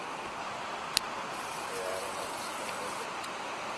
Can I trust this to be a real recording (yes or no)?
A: yes